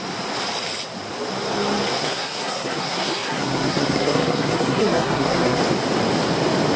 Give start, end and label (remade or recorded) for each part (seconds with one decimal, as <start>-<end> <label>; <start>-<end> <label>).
0.0-2.0 recorded; 2.0-5.6 remade; 5.6-6.8 recorded